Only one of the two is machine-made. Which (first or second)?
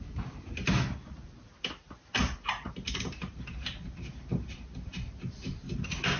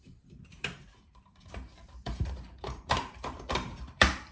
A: second